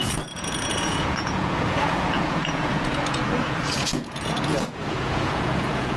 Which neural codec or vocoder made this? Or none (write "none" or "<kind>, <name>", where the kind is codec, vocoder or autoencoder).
vocoder, Vocos